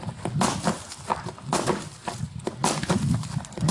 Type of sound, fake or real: real